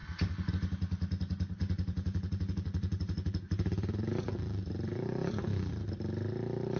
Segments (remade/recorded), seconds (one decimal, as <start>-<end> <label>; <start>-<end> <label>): 0.0-1.6 recorded; 1.6-5.7 remade; 5.7-6.8 recorded

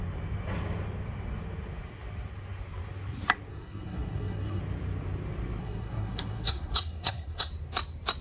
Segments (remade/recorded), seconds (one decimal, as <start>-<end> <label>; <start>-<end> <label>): 0.0-3.5 recorded; 3.5-4.6 remade; 4.6-5.6 recorded; 5.6-7.5 remade; 7.5-8.2 recorded

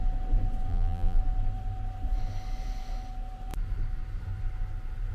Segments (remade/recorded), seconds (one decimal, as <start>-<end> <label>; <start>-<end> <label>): 0.0-0.7 recorded; 0.7-1.2 remade; 1.2-5.1 recorded

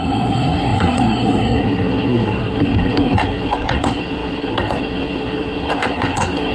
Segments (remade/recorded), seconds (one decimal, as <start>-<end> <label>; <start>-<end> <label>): 0.0-6.5 remade

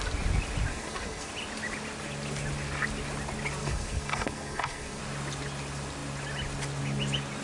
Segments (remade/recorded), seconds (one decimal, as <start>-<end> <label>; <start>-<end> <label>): 0.0-0.7 recorded; 0.7-1.3 remade; 1.3-3.6 recorded; 3.6-5.0 remade; 5.0-7.4 recorded

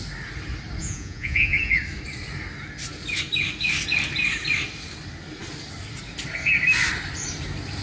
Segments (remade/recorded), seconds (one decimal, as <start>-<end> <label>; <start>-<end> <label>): 0.0-0.8 recorded; 0.8-1.8 remade; 1.8-7.8 recorded

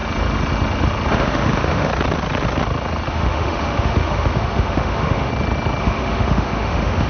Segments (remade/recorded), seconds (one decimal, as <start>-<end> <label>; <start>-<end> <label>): 0.0-1.1 recorded; 1.1-1.9 remade; 1.9-3.1 recorded; 3.1-5.3 remade; 5.3-5.8 recorded; 5.8-7.1 remade